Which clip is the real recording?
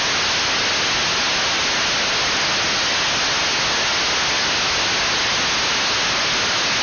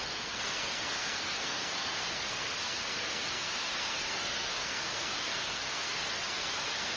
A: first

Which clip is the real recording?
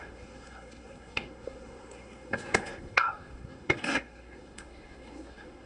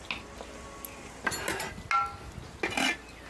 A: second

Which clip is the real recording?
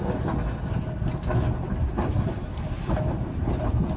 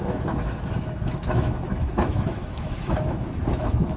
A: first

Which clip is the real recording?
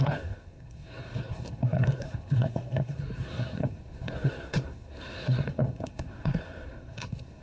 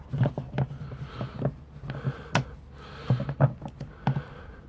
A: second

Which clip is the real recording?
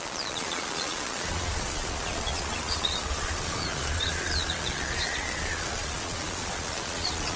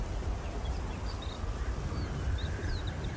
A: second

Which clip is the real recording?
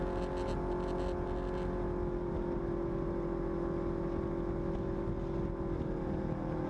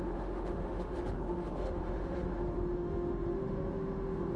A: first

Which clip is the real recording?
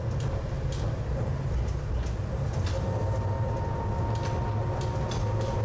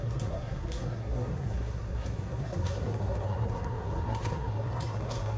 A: first